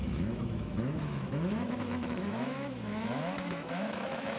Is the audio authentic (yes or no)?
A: no